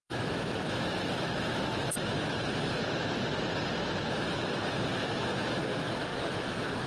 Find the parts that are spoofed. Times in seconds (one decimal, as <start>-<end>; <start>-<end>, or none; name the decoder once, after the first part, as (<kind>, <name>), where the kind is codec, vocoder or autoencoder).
0.0-2.8 (autoencoder, DAC-VAE); 4.1-6.9